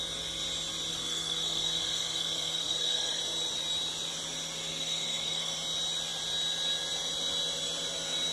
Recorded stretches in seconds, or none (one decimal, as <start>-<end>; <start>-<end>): 0.0-0.9; 3.2-4.7; 5.5-8.3